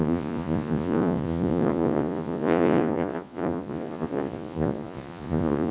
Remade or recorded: remade